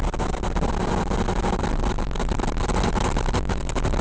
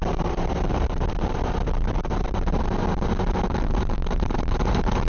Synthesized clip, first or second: second